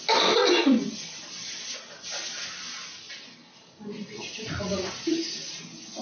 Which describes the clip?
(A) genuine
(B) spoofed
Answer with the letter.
A